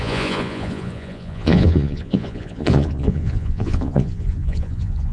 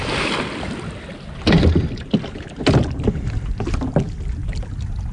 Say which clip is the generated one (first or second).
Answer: first